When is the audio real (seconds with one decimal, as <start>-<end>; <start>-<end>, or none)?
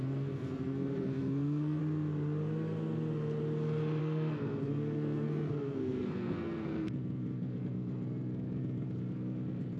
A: 1.8-4.0